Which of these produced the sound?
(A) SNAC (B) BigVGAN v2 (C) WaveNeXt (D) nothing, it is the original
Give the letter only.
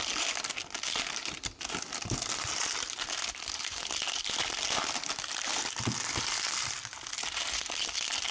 D